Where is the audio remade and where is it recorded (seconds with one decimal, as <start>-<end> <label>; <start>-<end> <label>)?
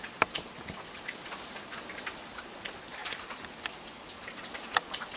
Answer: 0.0-5.2 recorded